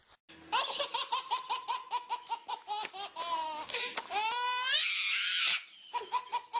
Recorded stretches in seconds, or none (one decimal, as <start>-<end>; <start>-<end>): 0.0-1.8; 2.5-4.8; 5.5-6.6